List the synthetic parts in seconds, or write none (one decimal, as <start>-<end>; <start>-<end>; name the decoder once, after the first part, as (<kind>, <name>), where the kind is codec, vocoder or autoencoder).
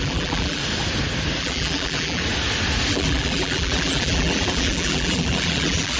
0.0-0.6 (vocoder, BigVGAN v2); 1.4-2.2; 2.9-6.0